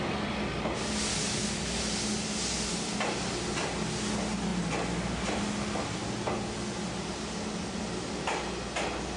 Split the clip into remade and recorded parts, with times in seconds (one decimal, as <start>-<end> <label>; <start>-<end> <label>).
0.0-1.1 recorded; 1.1-1.6 remade; 1.6-9.2 recorded